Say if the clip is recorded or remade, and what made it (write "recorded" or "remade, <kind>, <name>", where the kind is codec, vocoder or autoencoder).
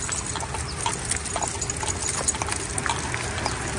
recorded